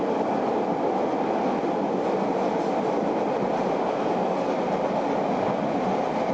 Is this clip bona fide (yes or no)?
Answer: yes